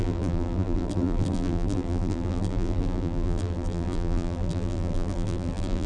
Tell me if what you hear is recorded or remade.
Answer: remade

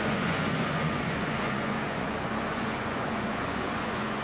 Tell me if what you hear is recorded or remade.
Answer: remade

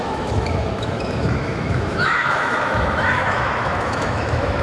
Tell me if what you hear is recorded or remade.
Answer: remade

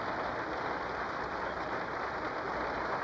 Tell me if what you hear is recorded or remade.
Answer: recorded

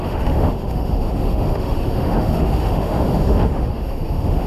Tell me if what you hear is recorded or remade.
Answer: remade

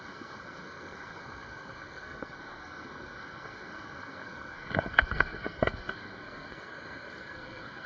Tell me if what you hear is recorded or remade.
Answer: remade